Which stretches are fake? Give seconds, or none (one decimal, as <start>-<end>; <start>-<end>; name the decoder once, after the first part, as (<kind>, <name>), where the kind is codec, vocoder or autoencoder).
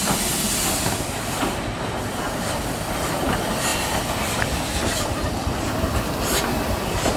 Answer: none